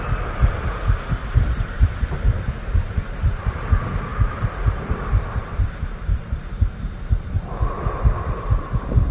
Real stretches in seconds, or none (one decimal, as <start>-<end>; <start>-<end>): 0.0-1.2; 1.9-2.6; 3.6-9.1